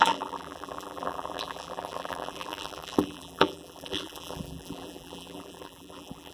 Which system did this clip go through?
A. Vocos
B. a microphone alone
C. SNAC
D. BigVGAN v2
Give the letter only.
D